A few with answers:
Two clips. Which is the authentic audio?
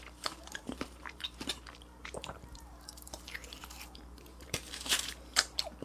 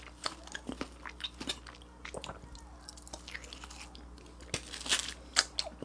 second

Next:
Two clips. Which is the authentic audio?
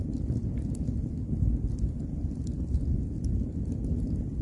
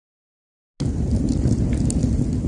second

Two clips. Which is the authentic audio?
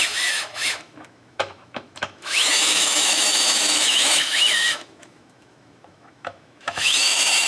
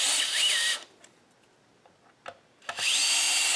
second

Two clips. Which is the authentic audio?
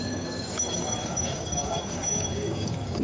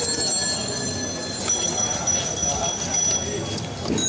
second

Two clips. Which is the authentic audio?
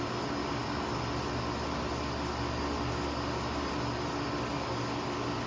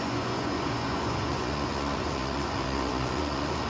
first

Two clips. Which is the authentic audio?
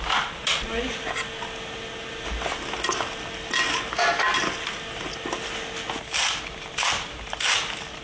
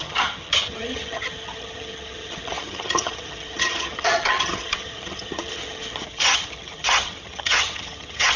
first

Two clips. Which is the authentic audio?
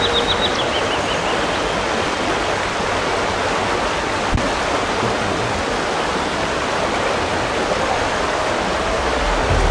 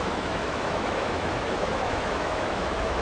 first